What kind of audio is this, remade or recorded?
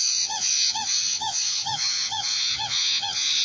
remade